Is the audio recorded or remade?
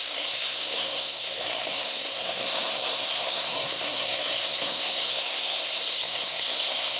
remade